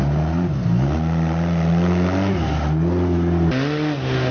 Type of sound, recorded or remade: recorded